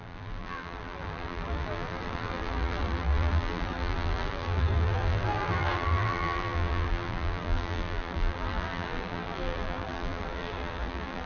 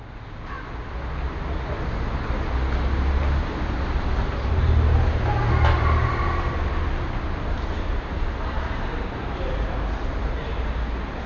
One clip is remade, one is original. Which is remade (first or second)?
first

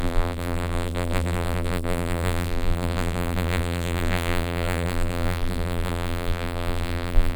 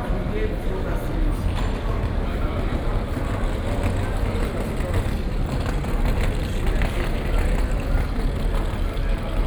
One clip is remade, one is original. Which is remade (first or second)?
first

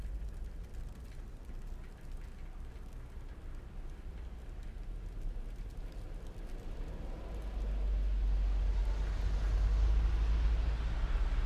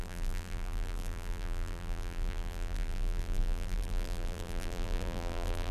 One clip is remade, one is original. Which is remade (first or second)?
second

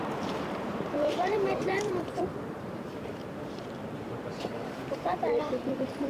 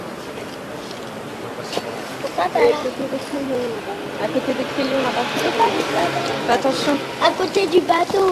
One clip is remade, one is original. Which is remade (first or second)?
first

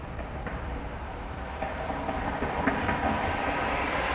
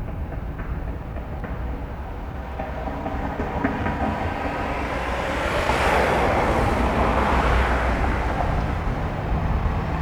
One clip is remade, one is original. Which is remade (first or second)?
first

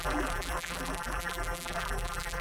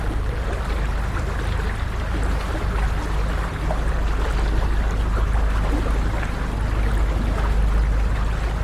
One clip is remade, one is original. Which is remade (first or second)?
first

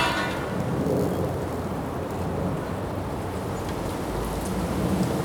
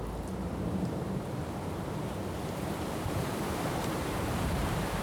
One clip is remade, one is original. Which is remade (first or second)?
second